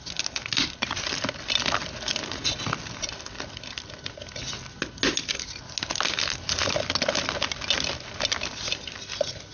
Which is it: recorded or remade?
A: recorded